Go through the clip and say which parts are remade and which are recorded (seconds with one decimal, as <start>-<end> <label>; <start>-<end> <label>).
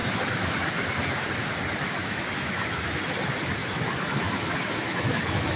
0.0-0.7 remade; 0.7-2.0 recorded; 2.0-3.0 remade; 3.0-3.6 recorded; 3.6-5.6 remade